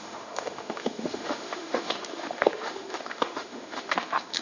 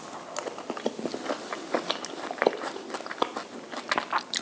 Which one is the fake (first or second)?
first